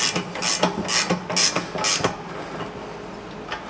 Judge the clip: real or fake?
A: real